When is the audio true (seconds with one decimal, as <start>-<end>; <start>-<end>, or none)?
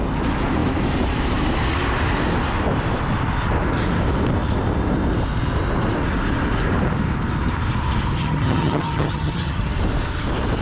0.0-8.2; 9.6-10.6